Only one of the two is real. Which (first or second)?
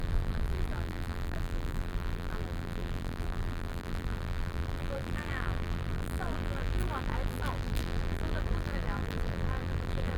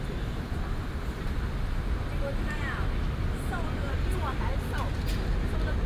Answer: second